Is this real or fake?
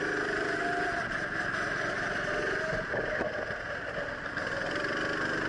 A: real